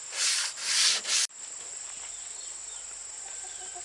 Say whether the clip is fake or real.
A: real